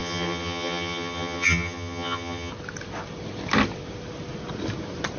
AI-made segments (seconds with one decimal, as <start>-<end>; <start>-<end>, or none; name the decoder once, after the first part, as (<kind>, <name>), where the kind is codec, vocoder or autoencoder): 0.0-2.5 (vocoder, HiFi-GAN)